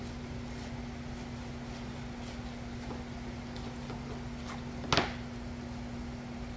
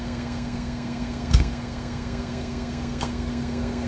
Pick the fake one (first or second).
second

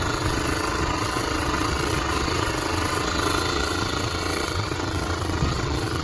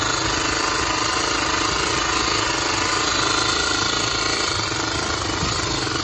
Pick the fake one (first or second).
first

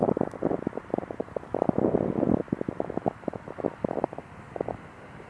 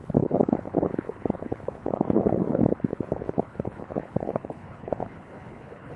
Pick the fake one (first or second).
second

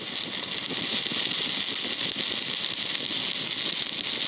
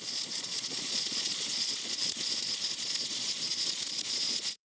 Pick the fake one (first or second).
second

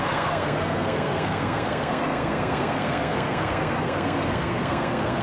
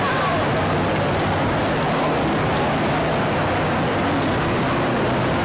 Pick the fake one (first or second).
first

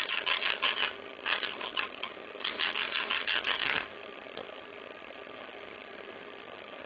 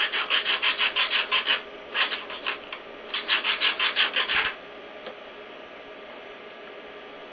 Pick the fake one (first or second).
first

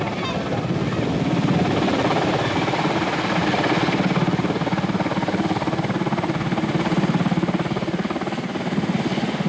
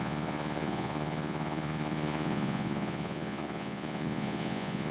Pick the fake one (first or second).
second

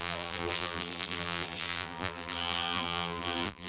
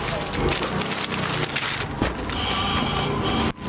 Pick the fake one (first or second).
first